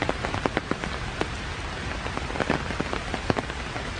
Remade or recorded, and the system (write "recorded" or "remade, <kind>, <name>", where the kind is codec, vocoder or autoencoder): recorded